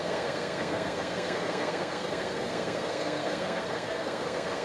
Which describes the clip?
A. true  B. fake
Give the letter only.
B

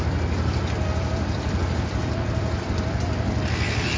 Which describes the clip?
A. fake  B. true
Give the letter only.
B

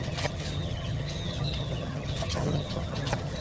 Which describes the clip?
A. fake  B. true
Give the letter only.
A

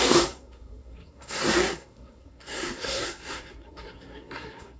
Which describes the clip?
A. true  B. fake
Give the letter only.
B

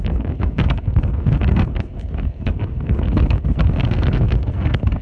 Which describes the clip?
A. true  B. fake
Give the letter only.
B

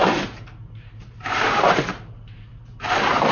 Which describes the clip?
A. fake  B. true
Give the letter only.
A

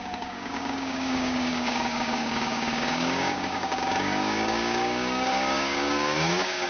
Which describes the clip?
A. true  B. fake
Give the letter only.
B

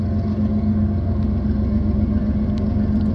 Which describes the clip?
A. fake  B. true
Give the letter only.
B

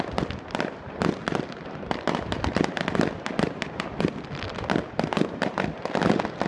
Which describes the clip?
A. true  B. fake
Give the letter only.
B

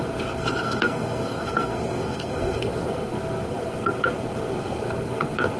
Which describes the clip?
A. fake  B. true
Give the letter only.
A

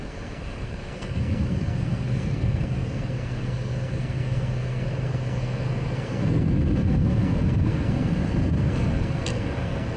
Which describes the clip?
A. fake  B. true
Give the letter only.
A